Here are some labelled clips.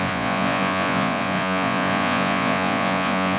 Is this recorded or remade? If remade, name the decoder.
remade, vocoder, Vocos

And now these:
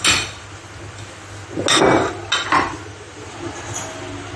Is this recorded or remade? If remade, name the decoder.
recorded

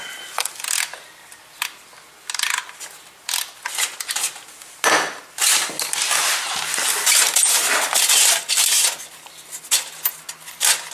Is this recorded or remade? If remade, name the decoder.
recorded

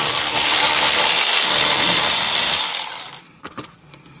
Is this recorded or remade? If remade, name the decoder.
recorded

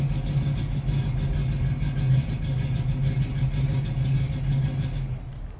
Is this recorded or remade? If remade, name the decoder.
recorded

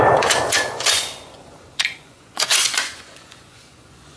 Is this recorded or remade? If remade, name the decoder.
remade, vocoder, Vocos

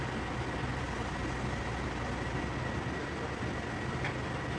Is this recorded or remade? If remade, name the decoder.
recorded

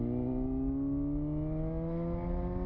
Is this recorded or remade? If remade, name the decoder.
recorded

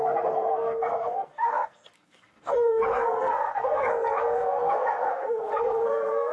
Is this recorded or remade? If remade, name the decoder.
remade, codec, SNAC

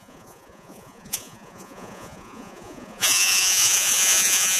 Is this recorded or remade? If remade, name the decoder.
remade, vocoder, Vocos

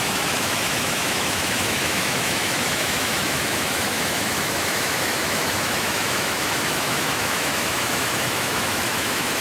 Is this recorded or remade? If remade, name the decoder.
remade, autoencoder, DAC-VAE